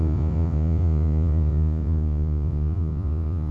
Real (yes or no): no